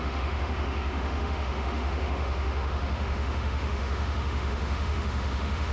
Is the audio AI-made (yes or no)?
yes